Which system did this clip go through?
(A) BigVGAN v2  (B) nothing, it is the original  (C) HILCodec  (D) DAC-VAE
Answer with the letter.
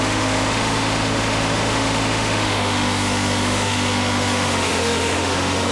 D